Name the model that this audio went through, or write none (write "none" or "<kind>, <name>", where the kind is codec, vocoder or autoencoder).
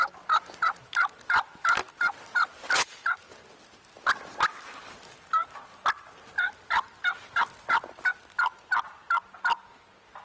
none